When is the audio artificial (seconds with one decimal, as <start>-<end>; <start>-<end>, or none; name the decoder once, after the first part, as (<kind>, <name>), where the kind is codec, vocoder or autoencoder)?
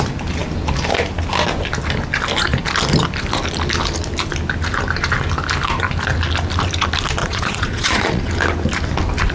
7.2-8.3 (vocoder, Vocos)